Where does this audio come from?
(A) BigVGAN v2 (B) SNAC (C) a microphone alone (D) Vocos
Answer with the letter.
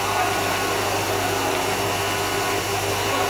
C